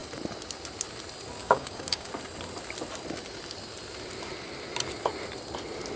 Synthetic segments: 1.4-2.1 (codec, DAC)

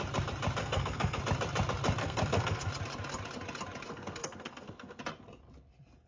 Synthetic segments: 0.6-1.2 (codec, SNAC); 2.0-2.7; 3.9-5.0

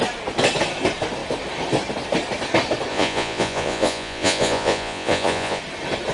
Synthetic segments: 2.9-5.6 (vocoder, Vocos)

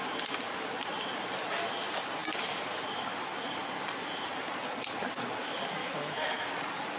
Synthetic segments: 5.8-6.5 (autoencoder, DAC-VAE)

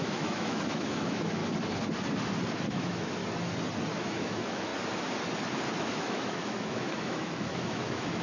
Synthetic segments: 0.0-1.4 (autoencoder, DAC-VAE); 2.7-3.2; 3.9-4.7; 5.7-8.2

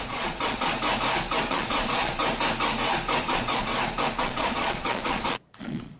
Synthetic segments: 0.0-0.7 (vocoder, Vocos); 1.5-2.2; 3.2-3.7; 4.2-6.0

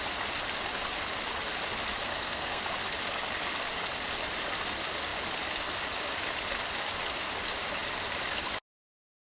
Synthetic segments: 2.1-2.6 (codec, SNAC)

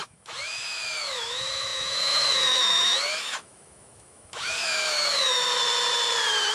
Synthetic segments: 0.0-5.5 (autoencoder, DAC-VAE)